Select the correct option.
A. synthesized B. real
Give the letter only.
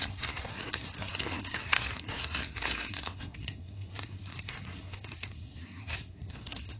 A